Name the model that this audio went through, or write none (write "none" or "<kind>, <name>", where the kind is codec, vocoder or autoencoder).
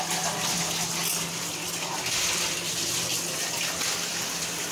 none